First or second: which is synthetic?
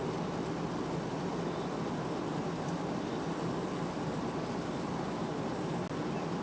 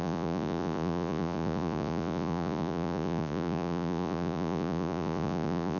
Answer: second